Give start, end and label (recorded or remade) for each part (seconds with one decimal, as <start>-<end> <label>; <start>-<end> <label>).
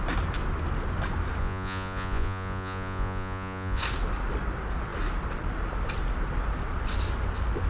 0.0-1.4 recorded; 1.4-3.8 remade; 3.8-7.7 recorded